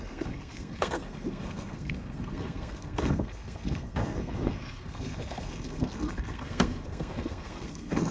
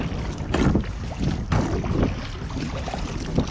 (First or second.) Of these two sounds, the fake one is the first